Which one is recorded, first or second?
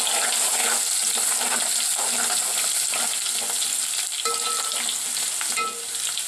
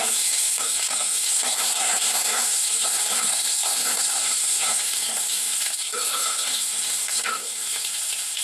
first